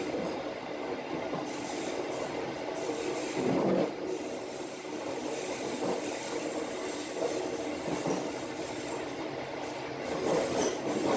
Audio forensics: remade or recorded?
recorded